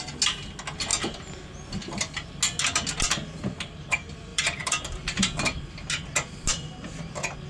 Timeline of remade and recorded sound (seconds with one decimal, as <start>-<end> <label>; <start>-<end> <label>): 0.0-4.3 recorded; 4.3-5.8 remade; 5.8-7.5 recorded